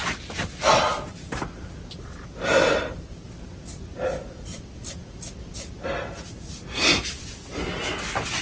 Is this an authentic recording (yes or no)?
yes